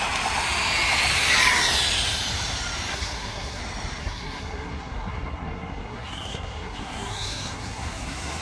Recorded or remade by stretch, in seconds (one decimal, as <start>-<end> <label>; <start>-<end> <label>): 0.0-2.9 recorded; 2.9-3.6 remade; 3.6-4.0 recorded; 4.0-8.4 remade